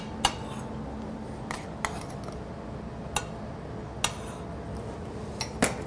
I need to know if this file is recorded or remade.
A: recorded